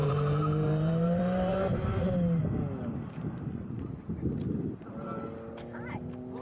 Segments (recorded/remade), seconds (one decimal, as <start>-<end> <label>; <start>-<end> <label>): 0.0-2.4 remade; 2.4-6.4 recorded